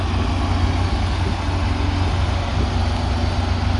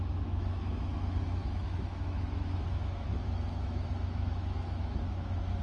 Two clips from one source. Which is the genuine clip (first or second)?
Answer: first